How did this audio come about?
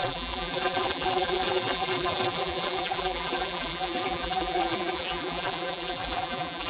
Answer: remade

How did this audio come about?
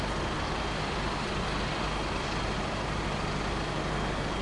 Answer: recorded